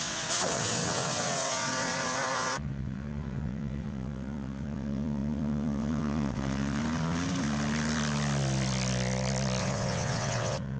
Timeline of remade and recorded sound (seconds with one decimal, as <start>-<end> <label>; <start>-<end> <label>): 0.0-6.8 remade; 6.8-9.6 recorded; 9.6-10.8 remade